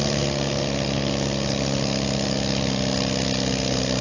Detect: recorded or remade recorded